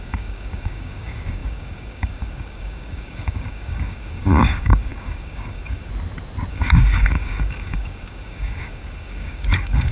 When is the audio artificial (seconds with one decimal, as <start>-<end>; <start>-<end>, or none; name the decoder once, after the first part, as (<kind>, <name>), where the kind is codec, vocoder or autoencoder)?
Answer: 0.0-5.9 (codec, DAC); 6.5-9.9